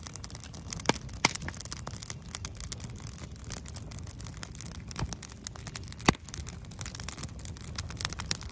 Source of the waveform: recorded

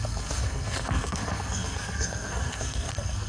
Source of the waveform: remade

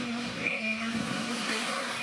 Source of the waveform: remade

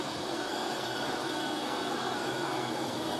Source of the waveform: remade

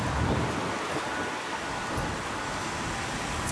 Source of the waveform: recorded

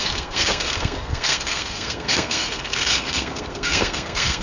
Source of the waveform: remade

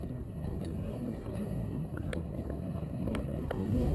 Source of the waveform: remade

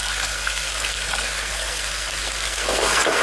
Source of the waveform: remade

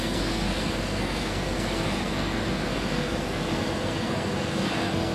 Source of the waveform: remade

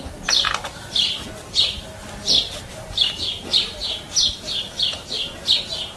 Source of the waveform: recorded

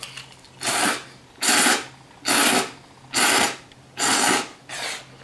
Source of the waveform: recorded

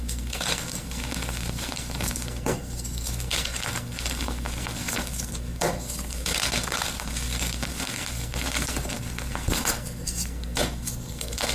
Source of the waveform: remade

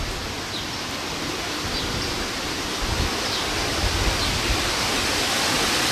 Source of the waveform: recorded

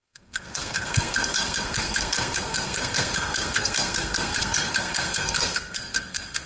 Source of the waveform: remade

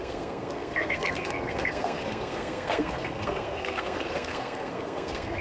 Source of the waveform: remade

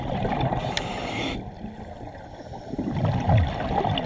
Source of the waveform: recorded